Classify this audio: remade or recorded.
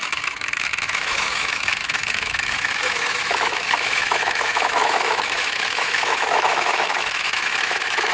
remade